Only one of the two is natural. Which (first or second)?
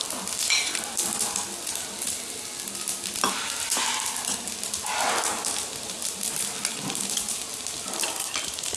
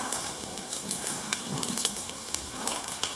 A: first